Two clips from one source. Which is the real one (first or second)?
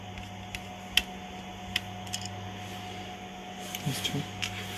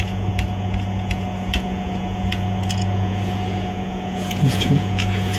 first